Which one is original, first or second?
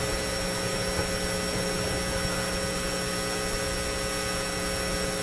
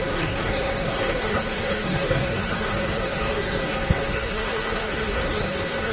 first